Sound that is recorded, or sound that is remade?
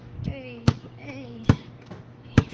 remade